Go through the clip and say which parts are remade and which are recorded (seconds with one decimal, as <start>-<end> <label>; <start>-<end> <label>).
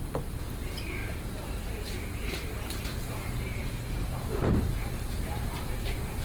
0.0-4.3 remade; 4.3-5.2 recorded; 5.2-6.2 remade